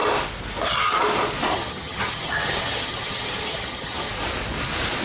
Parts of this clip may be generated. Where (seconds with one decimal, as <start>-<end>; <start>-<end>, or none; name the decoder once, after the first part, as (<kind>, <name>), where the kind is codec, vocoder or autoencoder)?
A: 1.5-4.1 (vocoder, HiFi-GAN)